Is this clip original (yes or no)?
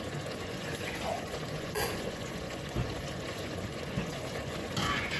no